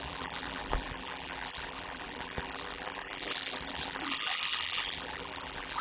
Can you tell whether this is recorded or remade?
remade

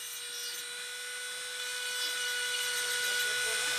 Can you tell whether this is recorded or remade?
recorded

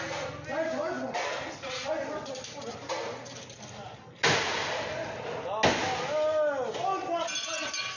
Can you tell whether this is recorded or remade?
recorded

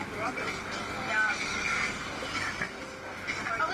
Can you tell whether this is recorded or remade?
recorded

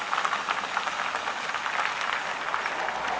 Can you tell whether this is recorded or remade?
recorded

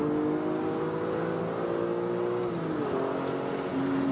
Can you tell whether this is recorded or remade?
recorded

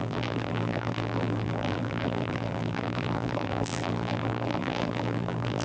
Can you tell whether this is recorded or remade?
remade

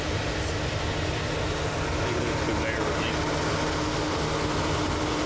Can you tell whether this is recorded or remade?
recorded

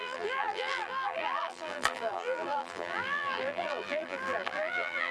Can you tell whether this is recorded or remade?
remade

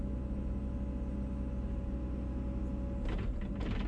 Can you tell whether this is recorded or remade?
recorded